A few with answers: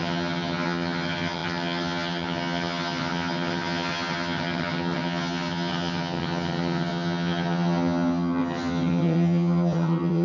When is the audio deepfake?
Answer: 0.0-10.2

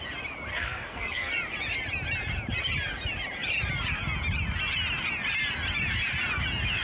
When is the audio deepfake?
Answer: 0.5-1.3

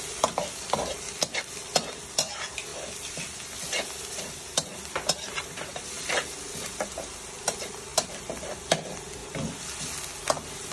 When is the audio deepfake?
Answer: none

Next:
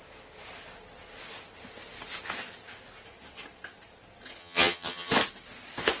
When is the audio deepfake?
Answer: 4.4-5.1

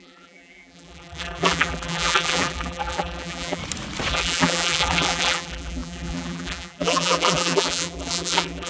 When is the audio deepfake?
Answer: 0.0-3.6; 4.1-8.7